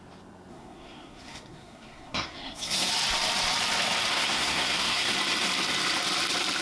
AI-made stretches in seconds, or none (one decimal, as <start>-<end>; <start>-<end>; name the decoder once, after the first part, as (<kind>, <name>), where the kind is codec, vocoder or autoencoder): 0.5-2.9 (codec, SNAC); 4.1-5.1